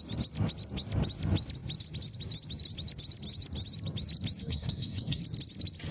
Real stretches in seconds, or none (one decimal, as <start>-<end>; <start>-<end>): 0.0-4.4; 5.2-5.9